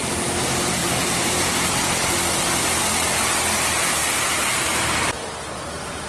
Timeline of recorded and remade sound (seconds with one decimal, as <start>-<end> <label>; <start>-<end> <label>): 0.0-0.8 recorded; 0.8-2.8 remade; 2.8-4.0 recorded; 4.0-5.2 remade; 5.2-6.1 recorded